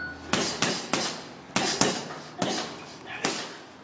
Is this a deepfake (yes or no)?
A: no